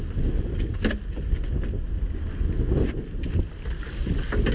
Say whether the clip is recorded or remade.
recorded